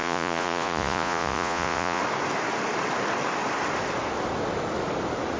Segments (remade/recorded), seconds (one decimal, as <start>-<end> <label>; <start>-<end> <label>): 0.0-2.0 remade; 2.0-5.4 recorded